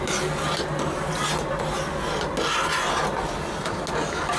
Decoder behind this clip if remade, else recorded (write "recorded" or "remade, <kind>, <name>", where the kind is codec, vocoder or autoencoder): recorded